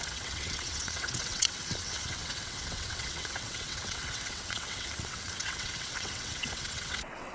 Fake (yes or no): yes